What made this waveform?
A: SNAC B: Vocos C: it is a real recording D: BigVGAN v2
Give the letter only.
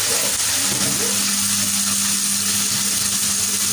C